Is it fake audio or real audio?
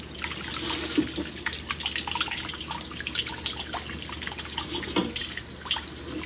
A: real